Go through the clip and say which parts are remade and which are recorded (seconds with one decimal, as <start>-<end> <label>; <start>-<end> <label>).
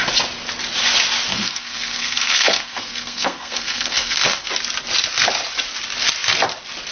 0.0-1.3 recorded; 1.3-4.5 remade; 4.5-6.9 recorded